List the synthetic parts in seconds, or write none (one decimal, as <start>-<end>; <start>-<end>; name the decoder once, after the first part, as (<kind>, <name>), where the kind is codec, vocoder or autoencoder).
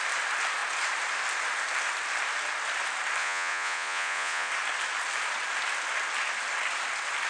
3.2-4.5 (vocoder, Vocos)